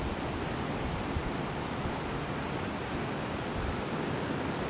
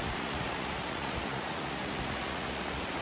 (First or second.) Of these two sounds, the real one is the first